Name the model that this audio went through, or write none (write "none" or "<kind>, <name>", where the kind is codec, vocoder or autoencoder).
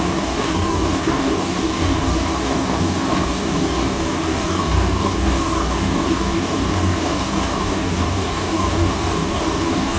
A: codec, DAC